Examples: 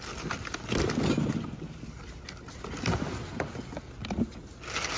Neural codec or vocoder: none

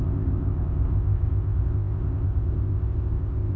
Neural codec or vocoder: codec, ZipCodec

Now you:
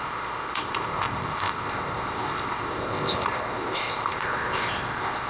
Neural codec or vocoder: codec, ZipCodec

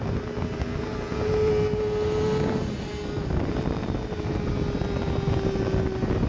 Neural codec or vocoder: none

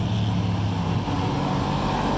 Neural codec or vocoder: none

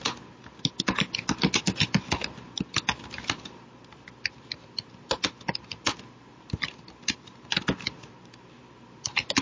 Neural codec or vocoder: none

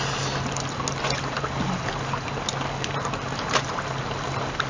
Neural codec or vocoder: none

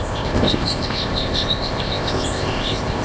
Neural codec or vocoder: codec, ZipCodec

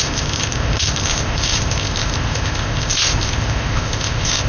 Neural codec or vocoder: codec, ZipCodec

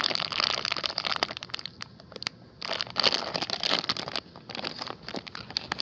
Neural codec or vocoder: none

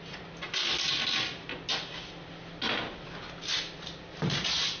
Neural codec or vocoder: none